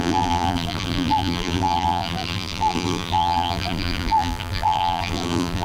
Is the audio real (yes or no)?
no